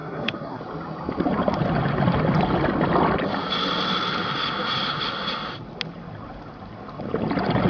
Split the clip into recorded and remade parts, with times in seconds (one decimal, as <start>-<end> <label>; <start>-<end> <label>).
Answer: 0.0-0.6 remade; 0.6-7.7 recorded